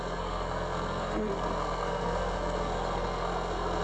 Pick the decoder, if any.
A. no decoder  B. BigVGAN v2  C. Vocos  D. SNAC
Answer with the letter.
D